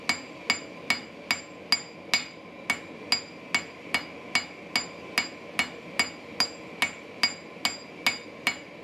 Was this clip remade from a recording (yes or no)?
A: no